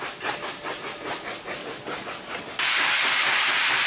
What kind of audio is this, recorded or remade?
recorded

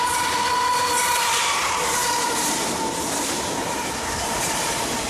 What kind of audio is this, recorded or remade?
remade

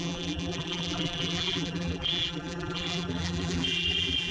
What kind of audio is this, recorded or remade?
remade